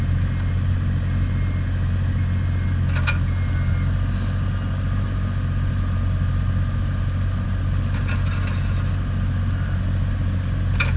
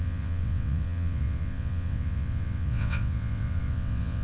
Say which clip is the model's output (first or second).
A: second